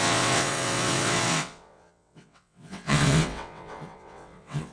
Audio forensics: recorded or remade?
remade